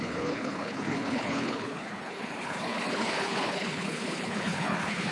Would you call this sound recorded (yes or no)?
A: no